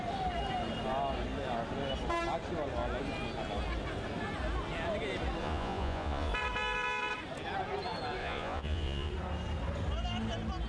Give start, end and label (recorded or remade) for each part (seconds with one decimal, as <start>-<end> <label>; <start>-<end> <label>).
0.0-5.4 recorded; 5.4-6.3 remade; 6.3-8.2 recorded; 8.2-9.1 remade; 9.1-10.7 recorded